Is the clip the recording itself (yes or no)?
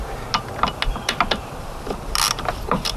yes